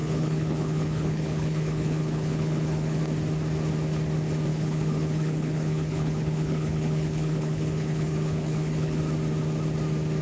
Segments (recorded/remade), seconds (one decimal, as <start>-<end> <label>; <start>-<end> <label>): 0.0-3.0 remade; 3.0-4.5 recorded; 4.5-9.0 remade; 9.0-10.2 recorded